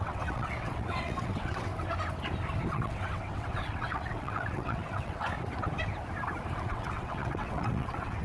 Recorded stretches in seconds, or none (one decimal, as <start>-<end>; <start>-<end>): 1.7-2.7; 5.3-6.6